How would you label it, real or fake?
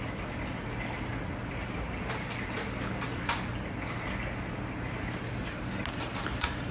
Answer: real